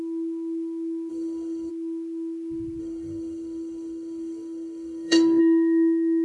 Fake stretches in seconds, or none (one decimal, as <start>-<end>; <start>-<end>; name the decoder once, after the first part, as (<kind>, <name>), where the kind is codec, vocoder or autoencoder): 1.1-1.7 (codec, DAC); 2.8-5.4